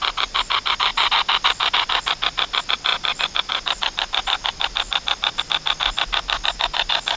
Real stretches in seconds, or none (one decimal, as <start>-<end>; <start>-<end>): 0.0-2.9; 5.4-7.2